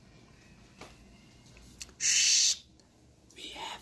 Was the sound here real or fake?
real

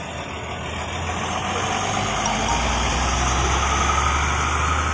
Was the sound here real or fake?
real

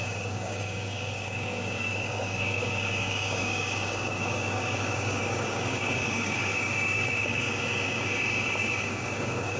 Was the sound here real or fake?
fake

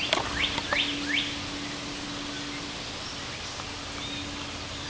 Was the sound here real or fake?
real